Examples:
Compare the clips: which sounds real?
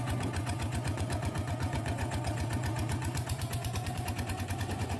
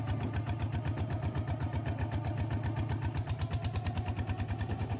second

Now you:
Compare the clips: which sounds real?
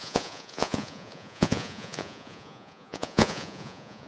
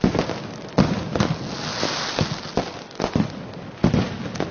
second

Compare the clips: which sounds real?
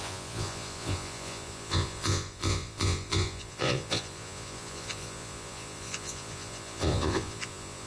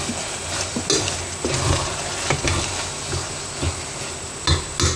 second